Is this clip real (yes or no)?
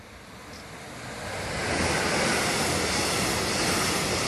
yes